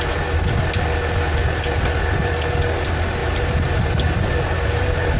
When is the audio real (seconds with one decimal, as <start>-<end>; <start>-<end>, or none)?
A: 0.0-3.2